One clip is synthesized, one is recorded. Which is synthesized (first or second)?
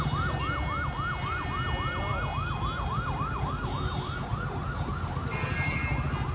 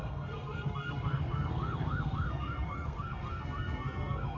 second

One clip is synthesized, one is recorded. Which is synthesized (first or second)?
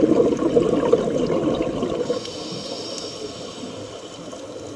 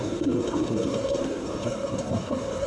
second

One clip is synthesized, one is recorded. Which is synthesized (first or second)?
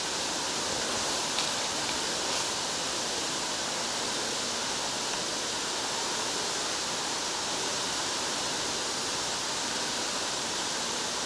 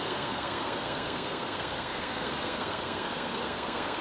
second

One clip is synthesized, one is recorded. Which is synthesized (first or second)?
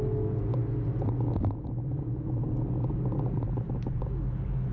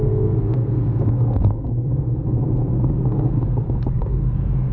second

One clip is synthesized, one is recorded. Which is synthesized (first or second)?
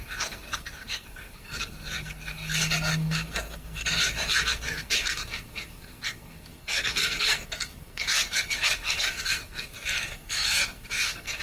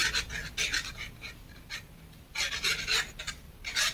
first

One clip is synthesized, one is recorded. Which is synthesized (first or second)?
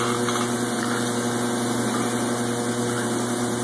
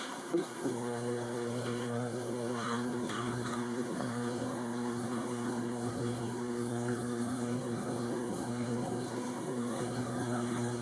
second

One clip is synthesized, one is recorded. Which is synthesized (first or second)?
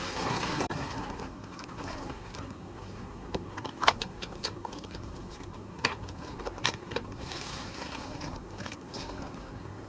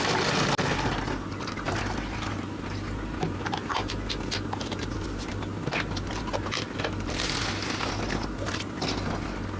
first